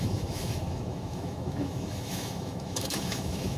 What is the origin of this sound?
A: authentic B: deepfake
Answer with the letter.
B